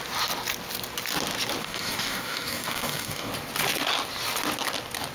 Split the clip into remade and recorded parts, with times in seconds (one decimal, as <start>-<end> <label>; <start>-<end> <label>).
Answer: 0.0-1.6 recorded; 1.6-3.3 remade; 3.3-5.1 recorded